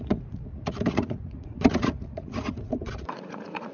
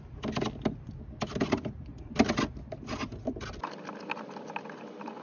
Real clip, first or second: second